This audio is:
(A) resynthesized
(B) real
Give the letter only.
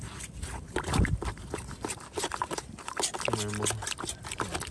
B